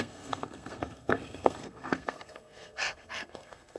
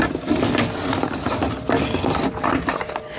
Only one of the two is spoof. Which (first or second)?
first